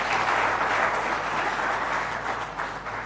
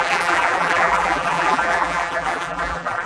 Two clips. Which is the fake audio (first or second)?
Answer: second